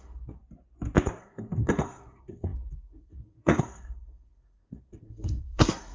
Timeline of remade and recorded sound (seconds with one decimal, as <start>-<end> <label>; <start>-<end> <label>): 0.0-0.4 remade; 0.4-1.2 recorded; 1.2-5.9 remade